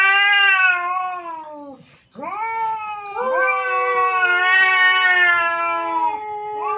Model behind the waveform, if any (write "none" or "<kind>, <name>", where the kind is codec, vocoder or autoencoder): none